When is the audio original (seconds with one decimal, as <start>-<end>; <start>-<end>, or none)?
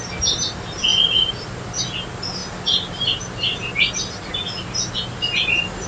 0.0-5.9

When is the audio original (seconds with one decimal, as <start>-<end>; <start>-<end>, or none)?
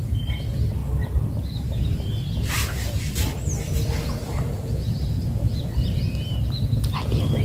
0.0-7.4